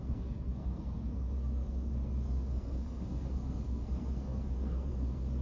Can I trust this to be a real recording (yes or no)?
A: no